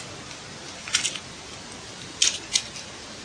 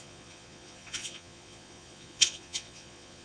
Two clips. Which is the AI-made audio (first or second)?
second